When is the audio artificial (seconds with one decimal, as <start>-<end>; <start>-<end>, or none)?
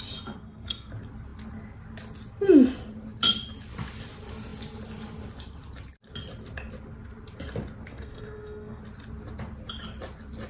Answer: 0.4-0.9; 7.9-8.8